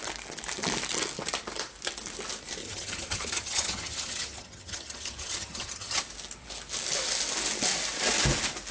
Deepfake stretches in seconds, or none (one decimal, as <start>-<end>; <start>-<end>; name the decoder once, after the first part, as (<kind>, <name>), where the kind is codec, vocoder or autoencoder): 2.6-6.0 (vocoder, HiFi-GAN)